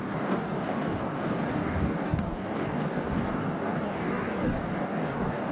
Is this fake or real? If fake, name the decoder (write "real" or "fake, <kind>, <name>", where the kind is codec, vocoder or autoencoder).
fake, codec, DAC